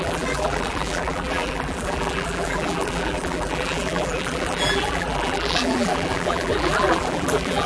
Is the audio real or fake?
fake